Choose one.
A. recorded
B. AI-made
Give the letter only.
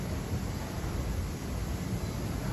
A